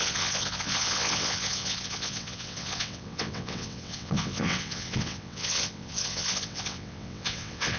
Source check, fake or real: fake